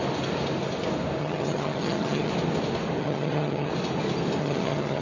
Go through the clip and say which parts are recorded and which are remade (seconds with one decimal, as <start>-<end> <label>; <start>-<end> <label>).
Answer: 0.0-1.2 recorded; 1.2-2.3 remade; 2.3-3.0 recorded; 3.0-3.7 remade; 3.7-4.4 recorded; 4.4-5.0 remade